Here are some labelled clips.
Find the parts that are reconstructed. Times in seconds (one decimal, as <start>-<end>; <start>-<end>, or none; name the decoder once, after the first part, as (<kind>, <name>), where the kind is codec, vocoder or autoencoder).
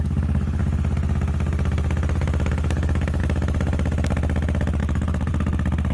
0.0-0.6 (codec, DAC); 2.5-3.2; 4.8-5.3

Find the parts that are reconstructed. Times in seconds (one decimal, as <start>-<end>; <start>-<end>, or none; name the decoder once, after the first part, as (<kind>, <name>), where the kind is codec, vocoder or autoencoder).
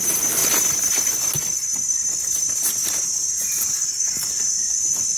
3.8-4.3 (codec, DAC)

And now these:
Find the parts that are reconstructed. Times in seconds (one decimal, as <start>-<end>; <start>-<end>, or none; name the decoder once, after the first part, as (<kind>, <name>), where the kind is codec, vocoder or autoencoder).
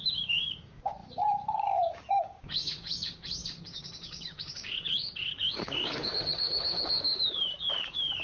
0.0-8.2 (codec, DAC)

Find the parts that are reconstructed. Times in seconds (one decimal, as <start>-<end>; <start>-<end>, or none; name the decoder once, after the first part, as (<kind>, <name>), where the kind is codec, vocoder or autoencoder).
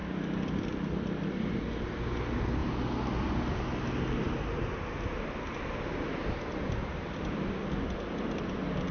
none